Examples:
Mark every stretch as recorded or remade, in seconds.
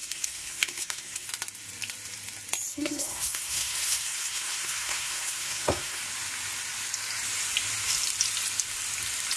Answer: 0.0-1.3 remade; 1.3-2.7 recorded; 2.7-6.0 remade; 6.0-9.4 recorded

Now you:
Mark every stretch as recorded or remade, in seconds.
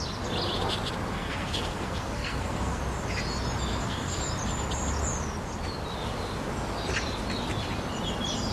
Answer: 0.0-1.1 recorded; 1.1-2.8 remade; 2.8-3.7 recorded; 3.7-4.2 remade; 4.2-8.5 recorded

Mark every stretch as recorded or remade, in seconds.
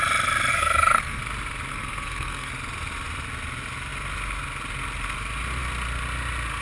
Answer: 0.0-0.5 recorded; 0.5-1.2 remade; 1.2-1.7 recorded; 1.7-2.5 remade; 2.5-6.6 recorded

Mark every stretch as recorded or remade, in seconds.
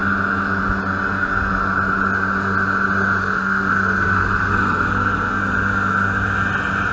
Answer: 0.0-3.2 recorded; 3.2-5.4 remade; 5.4-6.9 recorded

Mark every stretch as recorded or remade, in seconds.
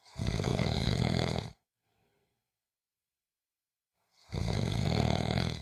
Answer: 0.0-5.6 remade